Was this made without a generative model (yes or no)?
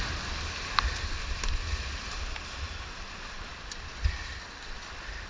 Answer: yes